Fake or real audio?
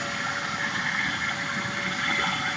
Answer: real